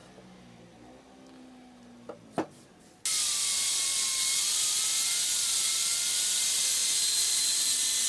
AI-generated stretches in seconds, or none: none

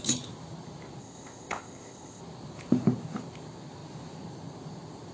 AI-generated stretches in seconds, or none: 1.0-2.2 (codec, ZipCodec)

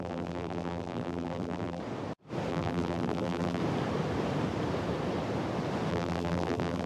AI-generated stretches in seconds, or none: 0.0-1.8 (vocoder, BigVGAN v2); 2.5-3.6; 5.9-6.9

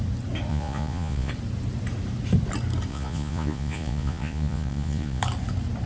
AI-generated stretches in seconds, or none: 0.5-1.3 (vocoder, Vocos); 2.9-5.2

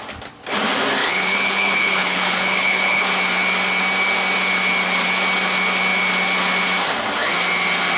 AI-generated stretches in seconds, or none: 1.0-3.1 (codec, HILCodec)

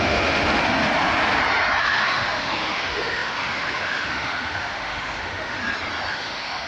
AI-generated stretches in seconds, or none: 0.0-0.6 (autoencoder, DAC-VAE); 1.8-5.6; 6.1-6.7

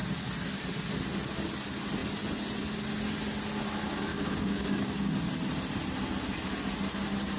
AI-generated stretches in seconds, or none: 4.1-5.1 (codec, DAC)

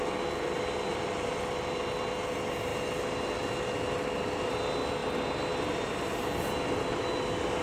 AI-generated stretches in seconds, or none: none